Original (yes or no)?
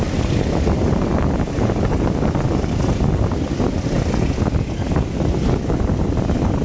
yes